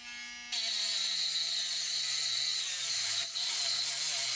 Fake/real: real